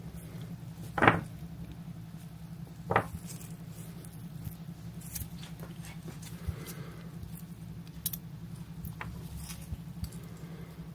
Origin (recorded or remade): recorded